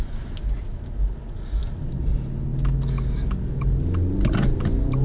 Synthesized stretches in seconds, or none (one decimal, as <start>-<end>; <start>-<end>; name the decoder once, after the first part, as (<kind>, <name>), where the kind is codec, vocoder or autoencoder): none